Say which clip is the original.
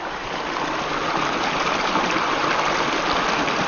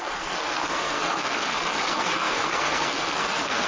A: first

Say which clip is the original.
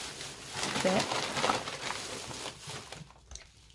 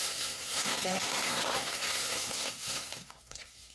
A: first